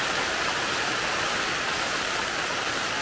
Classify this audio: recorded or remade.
recorded